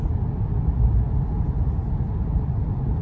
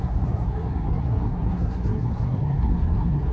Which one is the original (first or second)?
first